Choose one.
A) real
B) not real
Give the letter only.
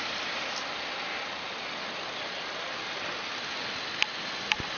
A